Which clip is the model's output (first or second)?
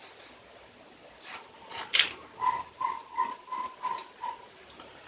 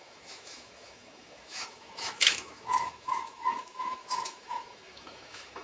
second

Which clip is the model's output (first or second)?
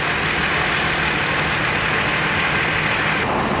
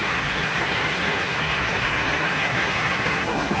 second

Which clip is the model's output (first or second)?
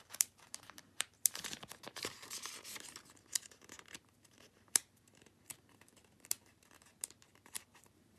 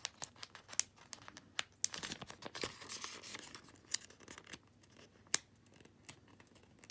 first